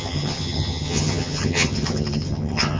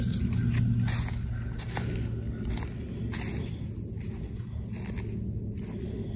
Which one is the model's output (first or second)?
first